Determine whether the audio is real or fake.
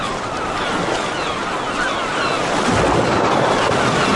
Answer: real